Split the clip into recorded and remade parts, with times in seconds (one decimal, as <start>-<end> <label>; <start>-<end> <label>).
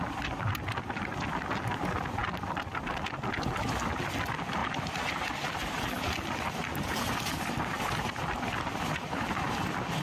0.0-4.6 recorded; 4.6-5.1 remade; 5.1-10.0 recorded